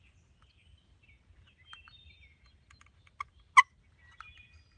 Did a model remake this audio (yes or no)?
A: no